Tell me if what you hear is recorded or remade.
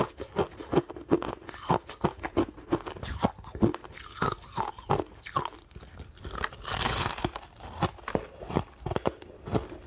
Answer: recorded